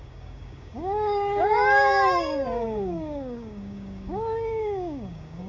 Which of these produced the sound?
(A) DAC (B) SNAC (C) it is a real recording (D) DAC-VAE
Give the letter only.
A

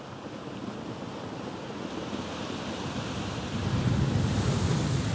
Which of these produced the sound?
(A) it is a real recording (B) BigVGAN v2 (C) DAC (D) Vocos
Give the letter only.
A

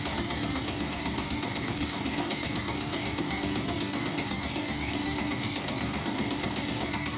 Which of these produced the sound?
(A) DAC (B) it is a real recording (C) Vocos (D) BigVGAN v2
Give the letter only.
A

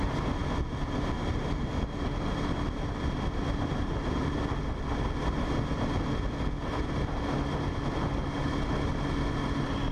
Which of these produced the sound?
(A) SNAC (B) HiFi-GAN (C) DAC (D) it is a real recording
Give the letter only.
D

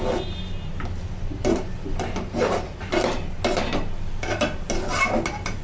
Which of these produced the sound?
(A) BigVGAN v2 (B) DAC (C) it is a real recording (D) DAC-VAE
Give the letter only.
C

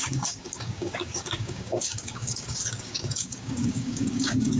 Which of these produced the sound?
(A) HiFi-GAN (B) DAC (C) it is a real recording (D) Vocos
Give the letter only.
B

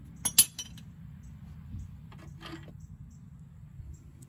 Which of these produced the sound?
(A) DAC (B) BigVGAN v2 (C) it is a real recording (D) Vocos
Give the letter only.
C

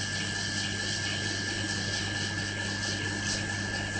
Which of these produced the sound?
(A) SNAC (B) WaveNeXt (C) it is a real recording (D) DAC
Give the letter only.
C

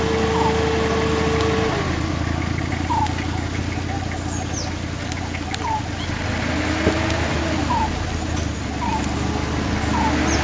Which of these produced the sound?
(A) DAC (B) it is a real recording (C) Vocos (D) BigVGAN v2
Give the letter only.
B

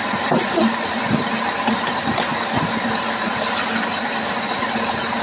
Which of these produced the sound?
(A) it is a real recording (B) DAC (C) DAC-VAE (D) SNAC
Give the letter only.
A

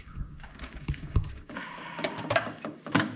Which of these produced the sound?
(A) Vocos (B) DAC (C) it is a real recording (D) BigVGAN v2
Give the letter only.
B